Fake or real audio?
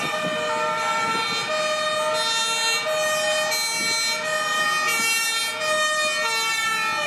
real